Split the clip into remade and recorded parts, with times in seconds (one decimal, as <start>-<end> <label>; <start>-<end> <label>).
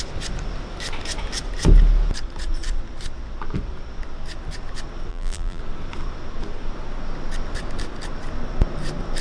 0.0-5.1 recorded; 5.1-5.6 remade; 5.6-9.2 recorded